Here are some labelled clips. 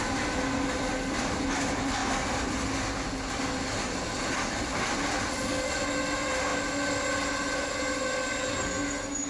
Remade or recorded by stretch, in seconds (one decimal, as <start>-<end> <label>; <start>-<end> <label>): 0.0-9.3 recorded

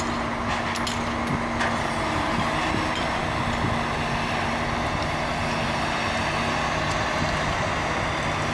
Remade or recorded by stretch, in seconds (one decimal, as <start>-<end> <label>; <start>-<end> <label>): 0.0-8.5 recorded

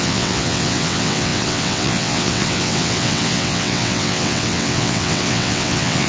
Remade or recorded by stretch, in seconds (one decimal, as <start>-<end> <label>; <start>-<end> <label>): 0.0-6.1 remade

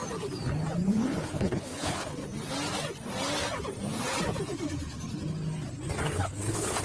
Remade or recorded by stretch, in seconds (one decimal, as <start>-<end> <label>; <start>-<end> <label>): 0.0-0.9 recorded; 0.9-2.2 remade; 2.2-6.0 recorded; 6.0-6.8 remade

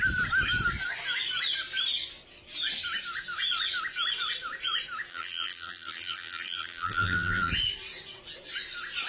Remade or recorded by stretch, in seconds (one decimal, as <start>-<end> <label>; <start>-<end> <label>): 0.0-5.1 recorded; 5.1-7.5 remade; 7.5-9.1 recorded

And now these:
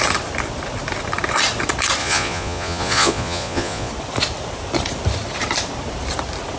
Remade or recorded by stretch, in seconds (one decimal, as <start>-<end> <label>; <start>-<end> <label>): 0.0-2.0 recorded; 2.0-3.9 remade; 3.9-6.6 recorded

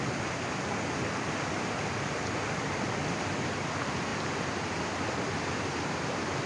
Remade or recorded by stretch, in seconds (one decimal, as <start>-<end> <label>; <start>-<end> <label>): 0.0-6.5 recorded

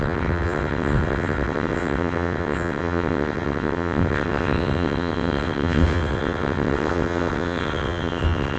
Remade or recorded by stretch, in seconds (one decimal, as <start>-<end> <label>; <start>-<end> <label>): 0.0-8.6 remade